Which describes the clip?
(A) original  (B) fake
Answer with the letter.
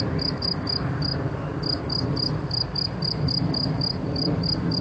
A